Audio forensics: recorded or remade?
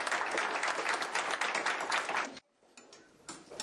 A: recorded